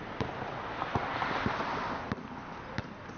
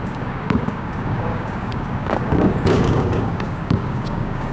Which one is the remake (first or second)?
second